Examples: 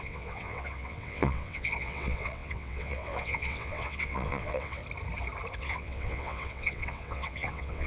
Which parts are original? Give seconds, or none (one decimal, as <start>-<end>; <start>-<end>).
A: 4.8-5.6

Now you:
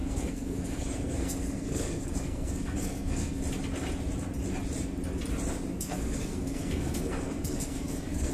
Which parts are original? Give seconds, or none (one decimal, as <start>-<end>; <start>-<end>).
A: 3.4-5.7

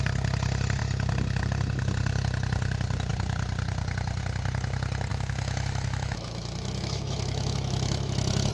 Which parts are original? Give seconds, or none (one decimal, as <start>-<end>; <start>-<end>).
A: 0.0-5.1